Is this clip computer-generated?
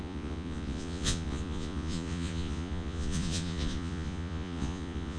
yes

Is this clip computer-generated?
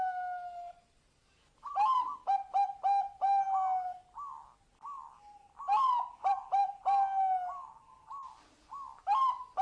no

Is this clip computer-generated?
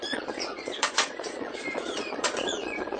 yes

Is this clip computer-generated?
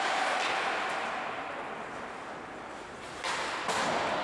no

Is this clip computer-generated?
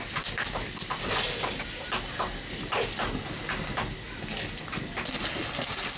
no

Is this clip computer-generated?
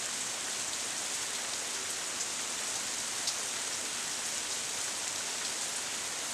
no